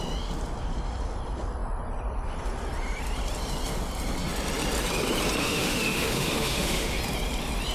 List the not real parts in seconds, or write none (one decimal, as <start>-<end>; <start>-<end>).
5.4-7.0